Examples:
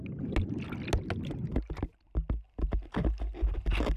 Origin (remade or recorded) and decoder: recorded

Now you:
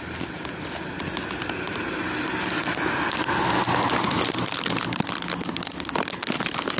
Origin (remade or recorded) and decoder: recorded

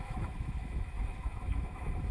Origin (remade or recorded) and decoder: remade, autoencoder, DAC-VAE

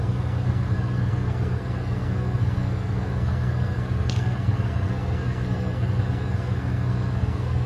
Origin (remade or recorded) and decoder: remade, codec, SNAC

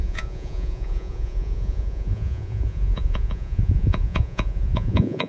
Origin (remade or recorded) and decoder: remade, vocoder, Vocos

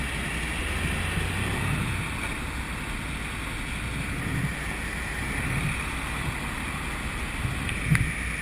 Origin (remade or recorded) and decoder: recorded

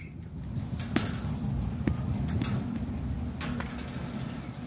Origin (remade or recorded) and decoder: recorded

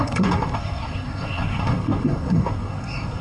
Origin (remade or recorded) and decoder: remade, codec, SNAC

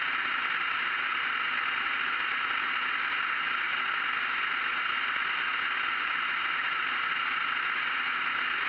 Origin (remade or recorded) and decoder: recorded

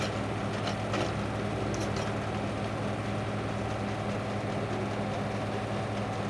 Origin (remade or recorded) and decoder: recorded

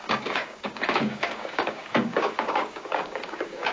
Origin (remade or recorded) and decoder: remade, codec, DAC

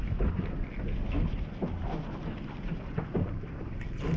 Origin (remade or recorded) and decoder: recorded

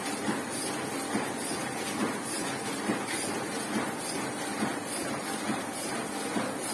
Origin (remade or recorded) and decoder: recorded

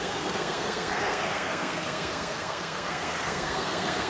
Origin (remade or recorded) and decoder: remade, codec, SNAC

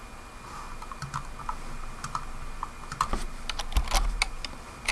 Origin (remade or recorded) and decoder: recorded